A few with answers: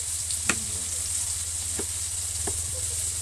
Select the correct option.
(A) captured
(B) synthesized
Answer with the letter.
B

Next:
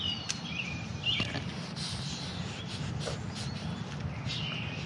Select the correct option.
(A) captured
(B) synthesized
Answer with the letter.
A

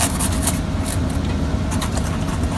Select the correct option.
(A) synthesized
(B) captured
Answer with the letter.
B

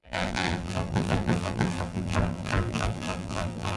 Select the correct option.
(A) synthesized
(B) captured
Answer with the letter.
A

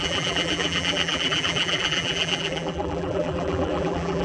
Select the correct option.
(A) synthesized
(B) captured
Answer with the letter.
A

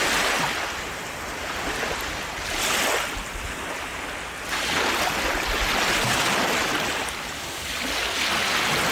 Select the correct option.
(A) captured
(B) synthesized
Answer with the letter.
A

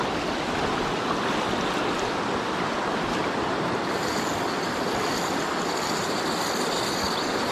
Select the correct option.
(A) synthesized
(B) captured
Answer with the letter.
B